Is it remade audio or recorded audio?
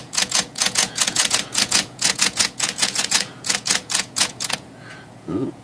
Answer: remade